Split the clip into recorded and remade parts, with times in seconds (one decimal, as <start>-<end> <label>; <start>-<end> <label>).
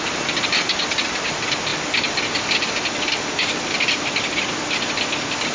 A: 0.0-5.5 recorded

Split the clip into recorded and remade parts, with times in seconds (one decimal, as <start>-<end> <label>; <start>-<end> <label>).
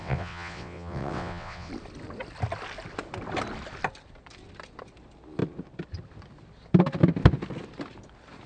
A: 0.0-1.7 remade; 1.7-8.5 recorded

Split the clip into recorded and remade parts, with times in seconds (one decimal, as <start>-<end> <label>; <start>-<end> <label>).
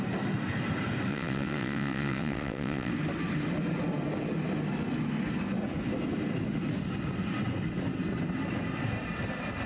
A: 0.0-1.1 recorded; 1.1-2.9 remade; 2.9-9.7 recorded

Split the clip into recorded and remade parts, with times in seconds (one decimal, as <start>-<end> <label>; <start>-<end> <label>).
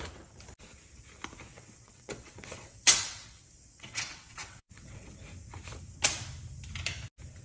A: 0.0-1.5 recorded; 1.5-5.1 remade; 5.1-7.4 recorded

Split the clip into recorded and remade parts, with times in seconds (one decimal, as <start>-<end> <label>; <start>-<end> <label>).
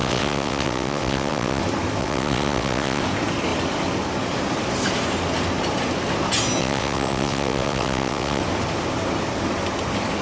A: 0.0-1.6 remade; 1.6-2.0 recorded; 2.0-3.0 remade; 3.0-6.6 recorded; 6.6-8.4 remade; 8.4-10.2 recorded